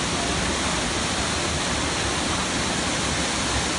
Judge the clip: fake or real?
real